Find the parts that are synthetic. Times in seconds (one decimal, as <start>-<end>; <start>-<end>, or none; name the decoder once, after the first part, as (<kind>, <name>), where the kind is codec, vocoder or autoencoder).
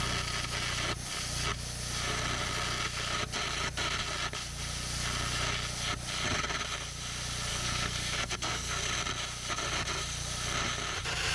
7.5-8.7 (codec, SNAC)